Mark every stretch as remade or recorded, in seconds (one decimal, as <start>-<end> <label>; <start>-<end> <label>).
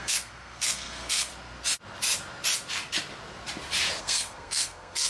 0.0-1.3 remade; 1.3-4.0 recorded; 4.0-5.1 remade